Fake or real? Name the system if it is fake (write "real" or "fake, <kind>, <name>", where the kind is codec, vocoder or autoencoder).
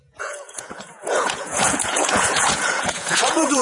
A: fake, vocoder, Vocos